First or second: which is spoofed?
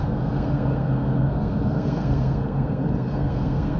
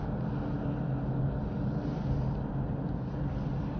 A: first